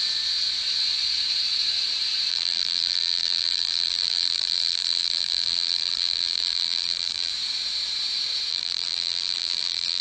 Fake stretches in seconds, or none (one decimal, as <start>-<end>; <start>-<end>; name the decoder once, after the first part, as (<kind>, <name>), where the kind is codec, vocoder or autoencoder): 2.3-7.3 (vocoder, BigVGAN v2); 8.5-10.0